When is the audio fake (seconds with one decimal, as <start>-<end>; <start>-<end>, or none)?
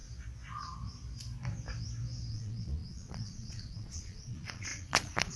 2.3-5.4